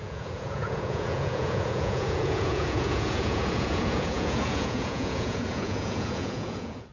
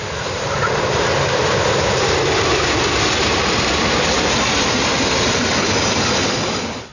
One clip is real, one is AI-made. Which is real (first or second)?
second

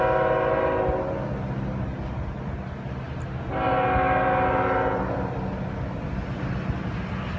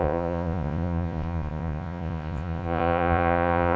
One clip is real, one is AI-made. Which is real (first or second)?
first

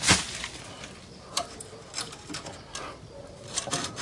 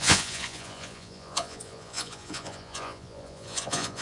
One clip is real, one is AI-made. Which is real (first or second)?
first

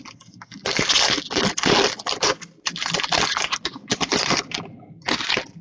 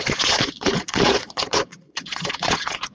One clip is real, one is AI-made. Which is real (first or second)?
first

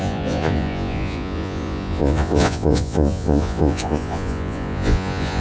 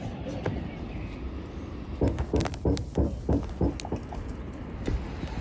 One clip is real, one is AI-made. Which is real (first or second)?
second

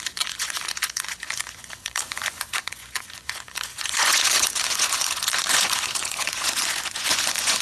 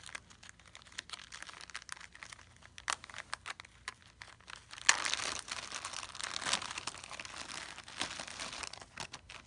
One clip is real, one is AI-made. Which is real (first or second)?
second